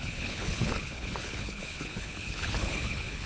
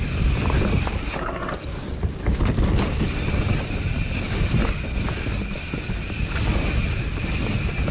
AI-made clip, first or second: first